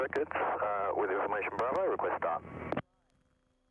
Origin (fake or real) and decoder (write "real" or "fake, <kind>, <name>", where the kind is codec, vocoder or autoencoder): real